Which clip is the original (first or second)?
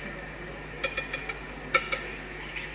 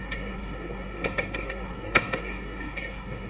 first